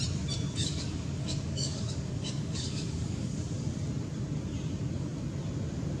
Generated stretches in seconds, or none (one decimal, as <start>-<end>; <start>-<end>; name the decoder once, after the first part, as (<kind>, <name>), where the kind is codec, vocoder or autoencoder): 0.6-3.4 (codec, DAC)